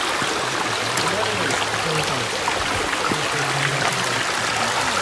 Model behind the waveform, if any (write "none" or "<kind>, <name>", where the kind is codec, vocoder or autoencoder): none